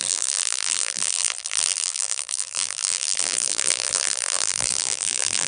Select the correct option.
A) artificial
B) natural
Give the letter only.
A